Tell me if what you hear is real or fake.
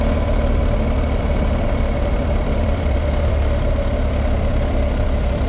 fake